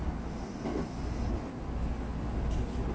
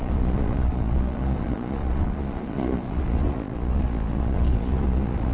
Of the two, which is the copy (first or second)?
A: second